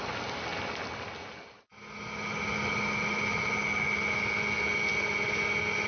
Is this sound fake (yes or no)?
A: no